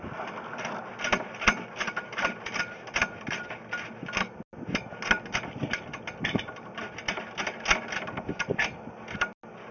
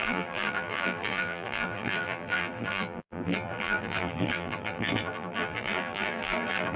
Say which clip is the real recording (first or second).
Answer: first